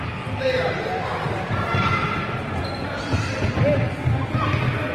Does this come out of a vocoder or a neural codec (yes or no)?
no